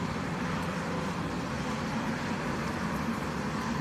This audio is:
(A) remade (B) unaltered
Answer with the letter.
A